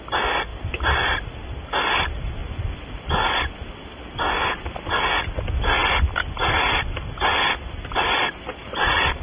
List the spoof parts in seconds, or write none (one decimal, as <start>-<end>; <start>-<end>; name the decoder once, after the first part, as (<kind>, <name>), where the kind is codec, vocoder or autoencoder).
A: 0.5-1.3 (vocoder, BigVGAN v2); 2.4-4.9; 5.8-9.2